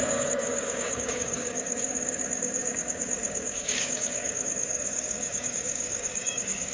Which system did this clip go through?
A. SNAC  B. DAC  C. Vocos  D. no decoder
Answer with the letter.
B